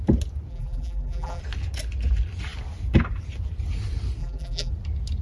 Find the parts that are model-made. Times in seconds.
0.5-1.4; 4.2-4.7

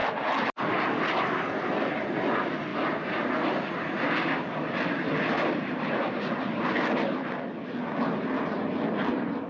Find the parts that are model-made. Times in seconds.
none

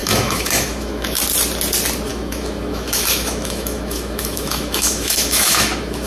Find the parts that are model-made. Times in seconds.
0.0-1.2; 2.1-6.1

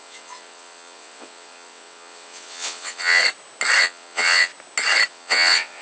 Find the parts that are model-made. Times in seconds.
0.0-3.2; 3.8-4.5; 5.1-5.8

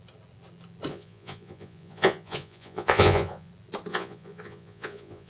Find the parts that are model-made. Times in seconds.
0.9-3.5; 3.9-5.3